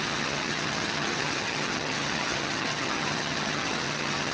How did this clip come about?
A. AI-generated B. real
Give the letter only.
A